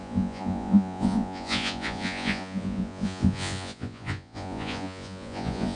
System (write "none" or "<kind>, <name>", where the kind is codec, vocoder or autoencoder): vocoder, Vocos